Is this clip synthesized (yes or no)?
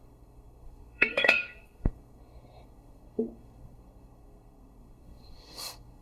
yes